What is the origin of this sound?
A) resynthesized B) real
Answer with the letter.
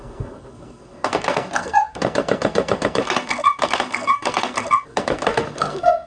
A